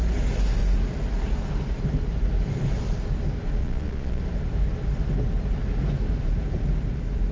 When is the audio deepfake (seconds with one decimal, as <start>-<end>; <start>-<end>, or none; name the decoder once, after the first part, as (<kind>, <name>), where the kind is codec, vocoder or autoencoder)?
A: 3.6-4.2 (vocoder, Vocos)